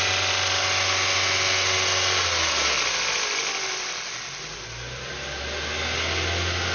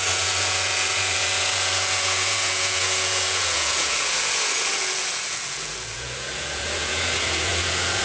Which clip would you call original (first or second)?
first